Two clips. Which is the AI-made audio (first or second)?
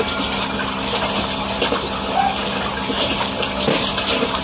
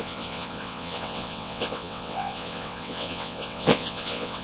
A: second